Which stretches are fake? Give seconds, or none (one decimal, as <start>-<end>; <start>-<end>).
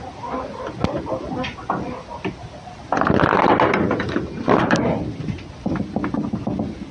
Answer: none